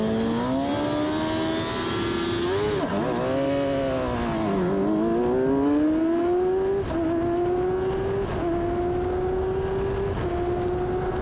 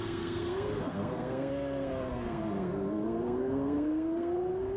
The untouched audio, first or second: first